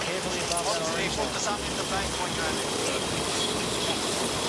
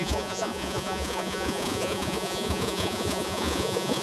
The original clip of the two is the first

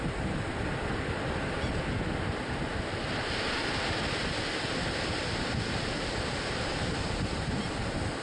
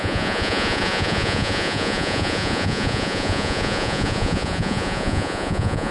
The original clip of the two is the first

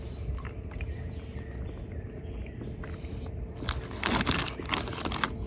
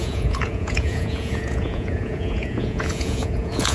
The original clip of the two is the first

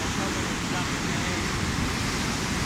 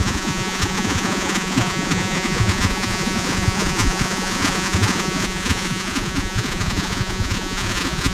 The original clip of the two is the first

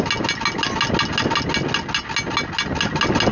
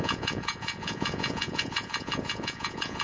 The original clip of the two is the first